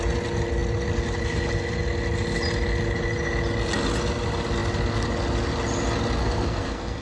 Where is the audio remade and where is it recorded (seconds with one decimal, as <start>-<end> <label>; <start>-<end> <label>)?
0.0-6.2 recorded; 6.2-7.0 remade